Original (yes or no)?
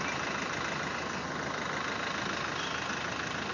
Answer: yes